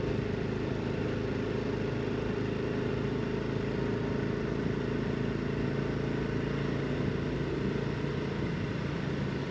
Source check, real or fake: real